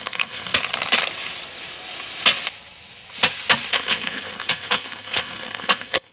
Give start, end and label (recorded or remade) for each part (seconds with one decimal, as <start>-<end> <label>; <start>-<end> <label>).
0.0-0.5 remade; 0.5-3.7 recorded; 3.7-6.1 remade